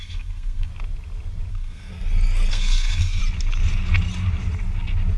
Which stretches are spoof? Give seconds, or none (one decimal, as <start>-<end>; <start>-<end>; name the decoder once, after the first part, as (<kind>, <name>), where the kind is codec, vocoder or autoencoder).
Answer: 0.0-0.7 (codec, SNAC); 1.5-1.9; 2.5-3.2